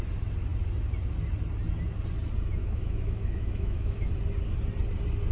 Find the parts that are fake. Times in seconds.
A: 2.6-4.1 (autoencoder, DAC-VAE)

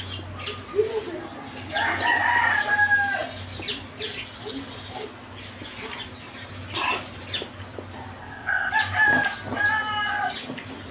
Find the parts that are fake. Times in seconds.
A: 8.2-8.7 (codec, ZipCodec)

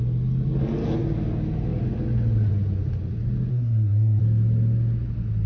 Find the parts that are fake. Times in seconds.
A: 3.5-4.2 (codec, SNAC)

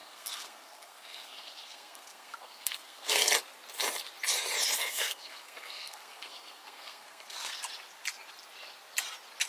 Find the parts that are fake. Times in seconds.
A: 0.0-3.3 (codec, SNAC); 4.8-7.6

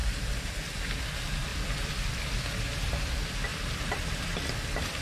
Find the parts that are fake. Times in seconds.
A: 0.0-0.9 (vocoder, BigVGAN v2); 1.5-2.2; 3.5-5.0

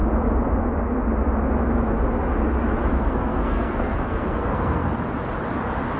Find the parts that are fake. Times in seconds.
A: 2.9-4.9 (codec, SNAC)